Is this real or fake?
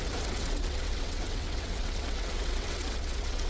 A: fake